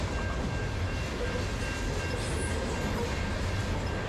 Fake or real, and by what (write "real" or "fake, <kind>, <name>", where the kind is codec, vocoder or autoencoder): real